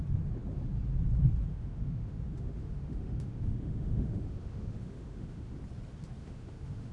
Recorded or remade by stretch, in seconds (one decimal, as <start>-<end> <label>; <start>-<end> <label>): 0.0-1.5 recorded; 1.5-5.6 remade; 5.6-6.2 recorded; 6.2-6.9 remade